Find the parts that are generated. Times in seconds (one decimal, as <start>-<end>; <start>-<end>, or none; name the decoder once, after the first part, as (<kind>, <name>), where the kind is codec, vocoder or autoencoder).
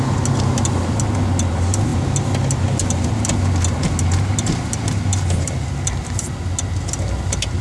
none